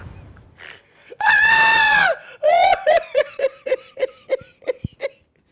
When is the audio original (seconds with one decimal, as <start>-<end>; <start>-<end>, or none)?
0.0-1.0; 4.3-5.5